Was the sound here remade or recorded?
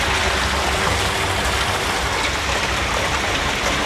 recorded